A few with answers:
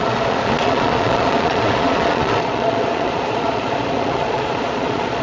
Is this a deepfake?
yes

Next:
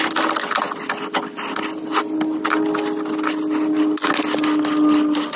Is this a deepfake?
no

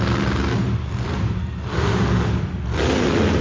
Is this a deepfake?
no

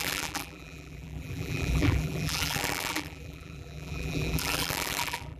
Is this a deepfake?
yes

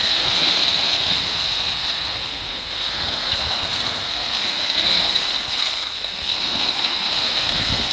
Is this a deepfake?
yes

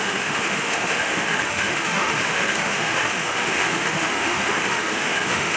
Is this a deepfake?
yes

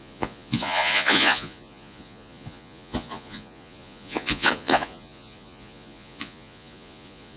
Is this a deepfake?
yes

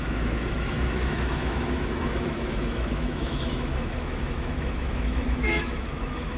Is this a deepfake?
yes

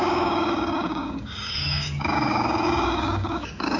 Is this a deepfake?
yes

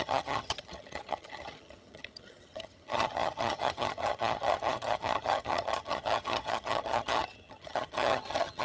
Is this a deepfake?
yes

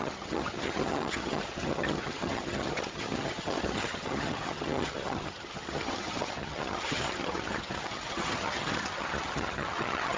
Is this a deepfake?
yes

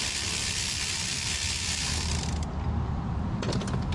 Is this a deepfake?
yes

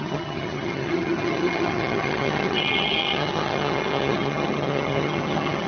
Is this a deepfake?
yes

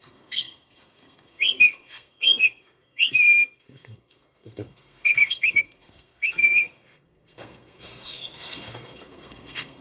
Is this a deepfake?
yes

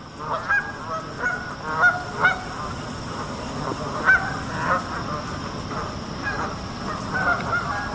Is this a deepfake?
no